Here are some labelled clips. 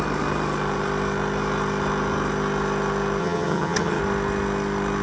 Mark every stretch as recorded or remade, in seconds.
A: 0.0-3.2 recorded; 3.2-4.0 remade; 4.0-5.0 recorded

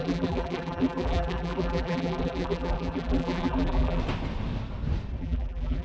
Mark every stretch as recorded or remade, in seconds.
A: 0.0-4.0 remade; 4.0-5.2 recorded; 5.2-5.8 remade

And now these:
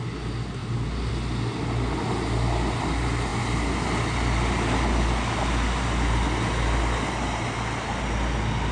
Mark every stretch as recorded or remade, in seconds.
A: 0.0-8.7 recorded

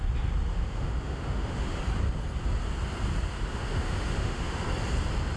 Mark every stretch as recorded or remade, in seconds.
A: 0.0-0.5 recorded; 0.5-1.8 remade; 1.8-3.5 recorded; 3.5-4.6 remade; 4.6-5.4 recorded

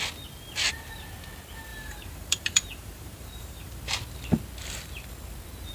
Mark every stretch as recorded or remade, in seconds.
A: 0.0-1.7 recorded; 1.7-3.8 remade; 3.8-5.7 recorded

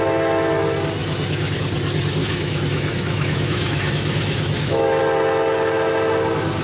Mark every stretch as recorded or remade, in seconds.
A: 0.0-1.0 recorded; 1.0-1.6 remade; 1.6-2.2 recorded; 2.2-5.0 remade; 5.0-6.6 recorded

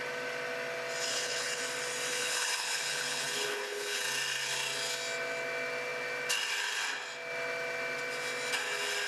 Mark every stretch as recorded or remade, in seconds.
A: 0.0-1.1 recorded; 1.1-1.6 remade; 1.6-2.1 recorded; 2.1-4.0 remade; 4.0-9.1 recorded